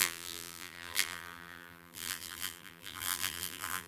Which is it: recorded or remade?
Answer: remade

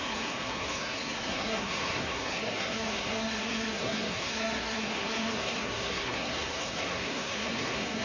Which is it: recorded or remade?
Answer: remade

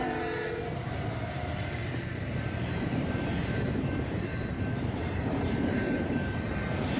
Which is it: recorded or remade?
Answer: remade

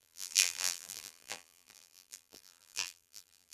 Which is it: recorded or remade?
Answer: remade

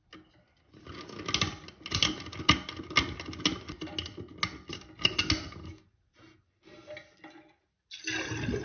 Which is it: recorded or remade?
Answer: recorded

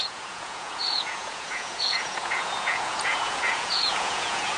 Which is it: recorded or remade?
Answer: remade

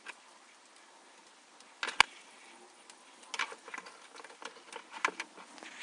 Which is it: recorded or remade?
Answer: recorded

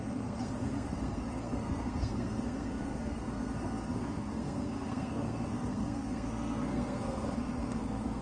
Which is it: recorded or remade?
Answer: remade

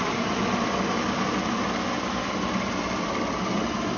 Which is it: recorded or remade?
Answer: remade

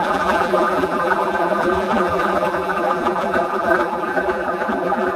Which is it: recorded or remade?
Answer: remade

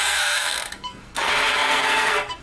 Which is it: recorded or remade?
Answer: remade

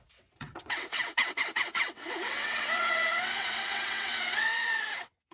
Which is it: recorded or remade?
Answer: remade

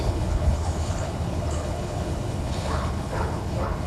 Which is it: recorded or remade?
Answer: remade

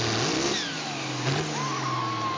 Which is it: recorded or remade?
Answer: recorded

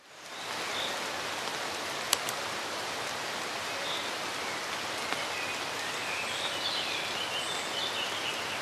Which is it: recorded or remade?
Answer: recorded